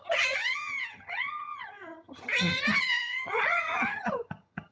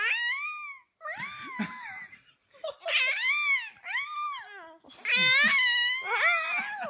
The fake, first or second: first